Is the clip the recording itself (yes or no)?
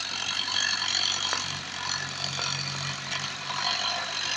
yes